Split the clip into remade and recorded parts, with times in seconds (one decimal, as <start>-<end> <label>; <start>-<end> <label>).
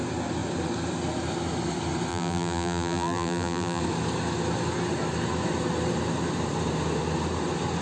0.0-2.1 recorded; 2.1-3.8 remade; 3.8-7.8 recorded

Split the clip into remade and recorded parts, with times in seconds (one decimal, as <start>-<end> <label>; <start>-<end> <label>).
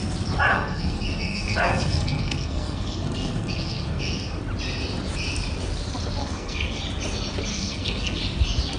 0.0-0.5 recorded; 0.5-4.4 remade; 4.4-6.2 recorded; 6.2-6.8 remade; 6.8-7.5 recorded; 7.5-8.2 remade; 8.2-8.8 recorded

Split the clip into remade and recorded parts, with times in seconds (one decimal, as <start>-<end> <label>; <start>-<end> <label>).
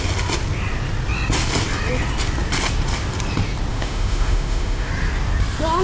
0.0-3.7 recorded; 3.7-4.9 remade; 4.9-5.8 recorded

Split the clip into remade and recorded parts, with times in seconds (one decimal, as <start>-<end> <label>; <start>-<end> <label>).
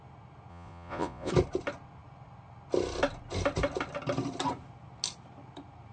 0.0-0.5 recorded; 0.5-1.3 remade; 1.3-5.9 recorded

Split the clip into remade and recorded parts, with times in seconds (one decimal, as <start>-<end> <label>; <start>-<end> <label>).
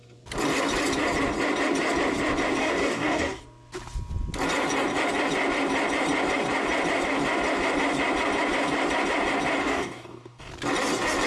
0.0-2.6 recorded; 2.6-3.4 remade; 3.4-9.6 recorded; 9.6-10.5 remade; 10.5-11.3 recorded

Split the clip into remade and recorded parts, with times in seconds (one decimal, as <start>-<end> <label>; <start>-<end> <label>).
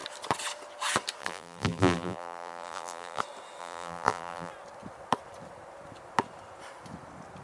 0.0-1.2 recorded; 1.2-3.2 remade; 3.2-3.6 recorded; 3.6-4.5 remade; 4.5-7.4 recorded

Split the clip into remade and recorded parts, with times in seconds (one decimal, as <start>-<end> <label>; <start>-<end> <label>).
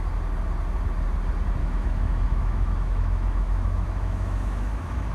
0.0-1.6 recorded; 1.6-5.1 remade